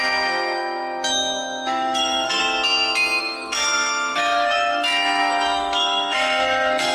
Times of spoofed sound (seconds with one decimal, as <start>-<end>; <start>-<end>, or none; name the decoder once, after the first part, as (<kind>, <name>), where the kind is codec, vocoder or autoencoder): 0.0-2.4 (codec, SNAC); 3.2-6.9